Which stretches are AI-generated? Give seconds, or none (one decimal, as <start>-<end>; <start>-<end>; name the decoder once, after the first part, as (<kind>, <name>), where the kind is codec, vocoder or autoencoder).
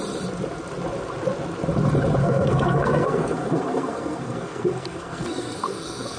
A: 2.2-6.2 (codec, SNAC)